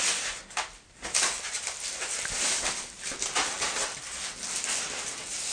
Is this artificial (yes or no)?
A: no